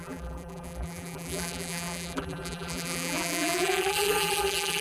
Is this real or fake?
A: fake